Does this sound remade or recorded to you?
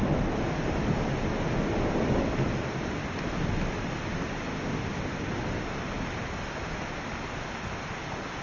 recorded